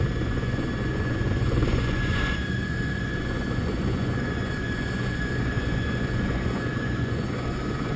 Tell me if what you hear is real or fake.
fake